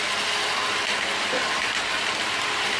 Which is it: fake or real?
real